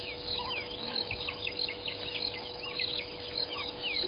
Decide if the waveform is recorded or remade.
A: remade